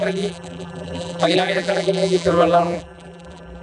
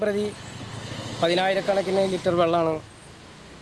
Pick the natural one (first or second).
second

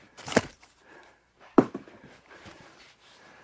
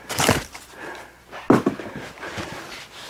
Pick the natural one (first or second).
second